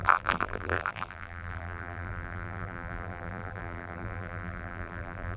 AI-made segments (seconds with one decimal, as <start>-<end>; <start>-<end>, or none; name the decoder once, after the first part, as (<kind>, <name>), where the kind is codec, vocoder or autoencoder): 0.0-5.4 (vocoder, BigVGAN v2)